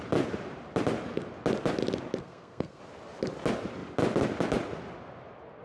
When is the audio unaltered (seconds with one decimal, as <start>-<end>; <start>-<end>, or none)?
0.0-2.2; 2.8-5.6